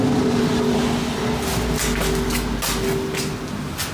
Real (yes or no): yes